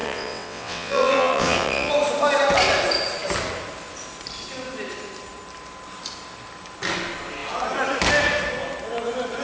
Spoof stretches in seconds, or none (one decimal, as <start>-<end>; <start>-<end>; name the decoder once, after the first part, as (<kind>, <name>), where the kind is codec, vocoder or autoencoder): 0.0-1.9 (vocoder, WaveNeXt)